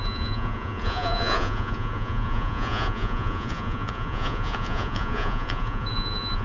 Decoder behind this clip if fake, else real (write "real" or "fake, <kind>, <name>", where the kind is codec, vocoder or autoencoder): fake, vocoder, Vocos